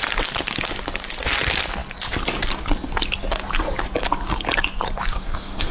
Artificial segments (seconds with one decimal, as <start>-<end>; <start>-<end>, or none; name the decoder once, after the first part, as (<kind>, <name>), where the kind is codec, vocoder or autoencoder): 5.1-5.7 (codec, SNAC)